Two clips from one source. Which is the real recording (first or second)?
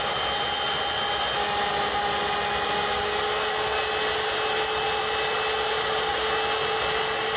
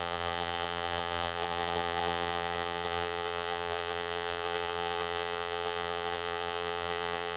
first